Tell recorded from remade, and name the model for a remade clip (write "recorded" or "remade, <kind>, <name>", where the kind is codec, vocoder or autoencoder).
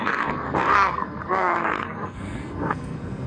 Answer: remade, codec, SNAC